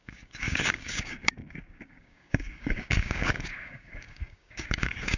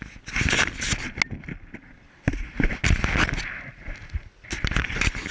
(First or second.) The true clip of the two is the second